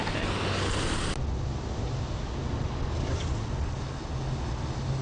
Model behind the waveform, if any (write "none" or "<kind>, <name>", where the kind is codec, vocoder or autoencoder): none